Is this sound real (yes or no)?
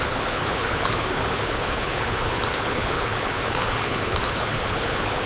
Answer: no